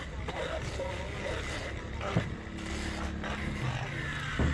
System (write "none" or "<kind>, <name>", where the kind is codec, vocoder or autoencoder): none